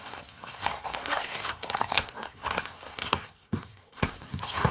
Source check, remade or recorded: remade